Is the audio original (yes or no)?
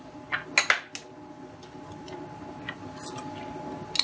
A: yes